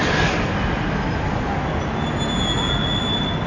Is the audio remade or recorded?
recorded